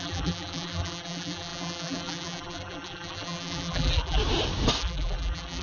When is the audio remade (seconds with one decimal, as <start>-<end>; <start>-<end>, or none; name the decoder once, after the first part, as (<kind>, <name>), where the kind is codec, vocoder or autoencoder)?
0.0-4.2 (vocoder, BigVGAN v2); 4.8-5.6